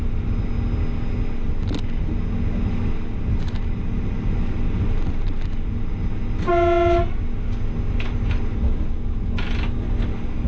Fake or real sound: real